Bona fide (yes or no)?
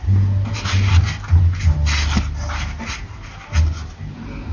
yes